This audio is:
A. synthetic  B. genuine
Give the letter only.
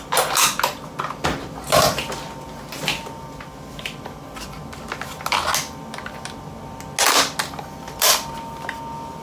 B